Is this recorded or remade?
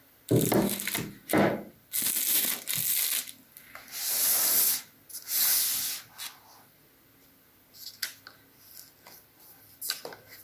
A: recorded